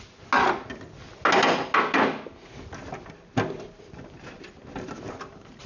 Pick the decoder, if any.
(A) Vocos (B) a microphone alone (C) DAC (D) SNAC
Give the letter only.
B